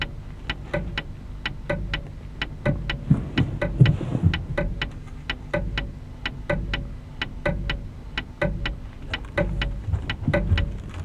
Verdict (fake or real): real